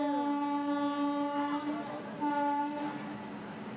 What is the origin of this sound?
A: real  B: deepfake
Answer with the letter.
A